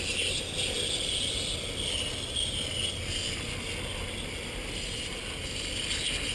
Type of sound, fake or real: real